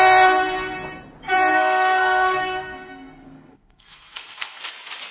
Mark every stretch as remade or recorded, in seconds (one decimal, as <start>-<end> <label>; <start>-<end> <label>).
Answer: 0.0-1.5 recorded; 1.5-4.6 remade; 4.6-5.1 recorded